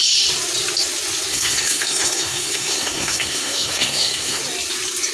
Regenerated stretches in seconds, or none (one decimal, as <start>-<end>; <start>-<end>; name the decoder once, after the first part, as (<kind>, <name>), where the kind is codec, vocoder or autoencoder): 1.3-4.4 (codec, SNAC)